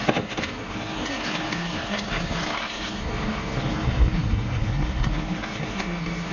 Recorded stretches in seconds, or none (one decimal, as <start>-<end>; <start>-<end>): none